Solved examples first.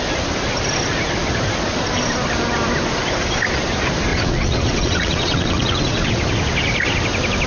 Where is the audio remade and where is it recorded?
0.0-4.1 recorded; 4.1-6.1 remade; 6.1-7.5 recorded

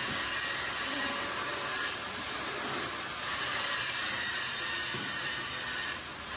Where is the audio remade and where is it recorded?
0.0-1.5 recorded; 1.5-2.5 remade; 2.5-3.3 recorded; 3.3-5.3 remade; 5.3-6.4 recorded

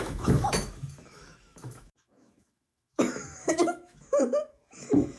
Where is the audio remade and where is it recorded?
0.0-5.2 remade

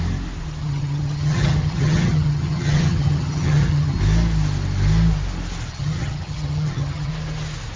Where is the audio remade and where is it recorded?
0.0-0.6 recorded; 0.6-4.0 remade; 4.0-5.7 recorded; 5.7-7.1 remade; 7.1-7.8 recorded

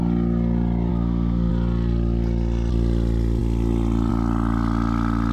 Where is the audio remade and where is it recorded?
0.0-0.9 recorded; 0.9-1.5 remade; 1.5-5.3 recorded

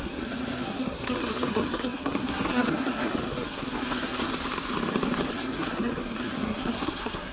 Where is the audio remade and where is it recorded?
0.0-4.3 remade; 4.3-5.3 recorded; 5.3-7.3 remade